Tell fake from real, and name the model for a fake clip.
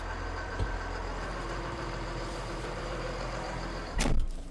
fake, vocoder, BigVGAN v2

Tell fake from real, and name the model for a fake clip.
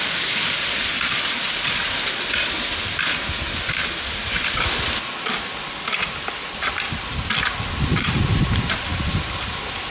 real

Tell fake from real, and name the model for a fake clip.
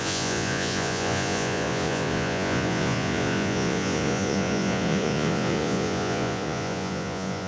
fake, vocoder, Vocos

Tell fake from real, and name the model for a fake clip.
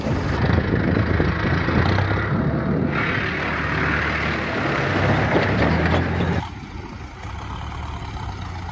real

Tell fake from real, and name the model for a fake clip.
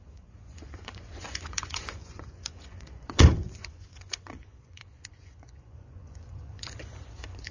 fake, vocoder, Vocos